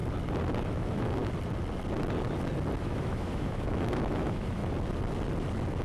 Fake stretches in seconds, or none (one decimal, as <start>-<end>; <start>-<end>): 0.7-1.2; 2.8-4.6